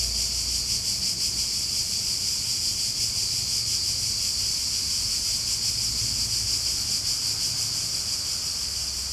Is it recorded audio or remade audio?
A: recorded